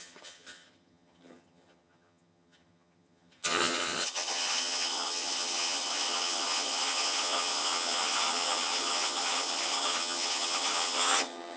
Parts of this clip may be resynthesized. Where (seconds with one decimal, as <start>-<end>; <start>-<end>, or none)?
0.0-11.6